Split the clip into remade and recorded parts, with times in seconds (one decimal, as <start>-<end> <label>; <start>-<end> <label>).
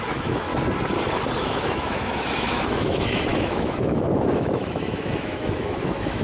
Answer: 0.0-0.5 remade; 0.5-1.4 recorded; 1.4-6.2 remade